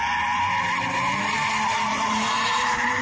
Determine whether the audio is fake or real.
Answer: real